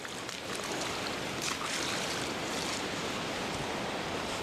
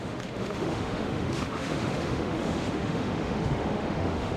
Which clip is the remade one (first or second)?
second